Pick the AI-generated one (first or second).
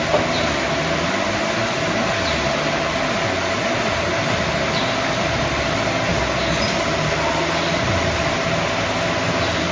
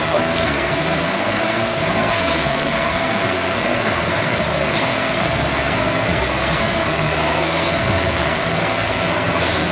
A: second